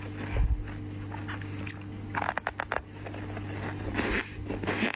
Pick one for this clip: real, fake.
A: real